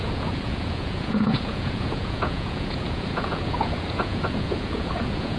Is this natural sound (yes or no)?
no